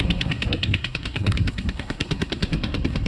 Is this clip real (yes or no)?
no